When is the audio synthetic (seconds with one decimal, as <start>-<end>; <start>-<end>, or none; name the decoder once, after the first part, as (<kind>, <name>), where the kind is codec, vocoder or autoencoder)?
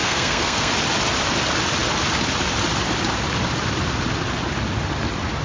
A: 0.0-0.7 (codec, SNAC)